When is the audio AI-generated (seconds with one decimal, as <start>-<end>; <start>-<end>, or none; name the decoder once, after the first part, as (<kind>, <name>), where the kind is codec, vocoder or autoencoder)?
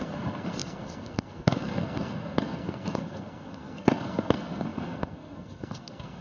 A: 0.0-6.2 (codec, SNAC)